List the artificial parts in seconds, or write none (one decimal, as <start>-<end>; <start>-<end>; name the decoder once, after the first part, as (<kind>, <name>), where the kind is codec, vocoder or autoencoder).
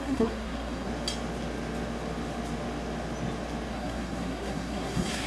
0.0-0.9 (codec, SNAC); 3.7-5.3